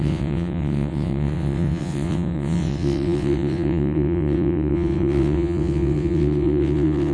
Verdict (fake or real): fake